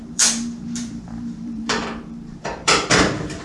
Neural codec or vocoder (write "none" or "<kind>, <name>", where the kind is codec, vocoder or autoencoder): vocoder, BigVGAN v2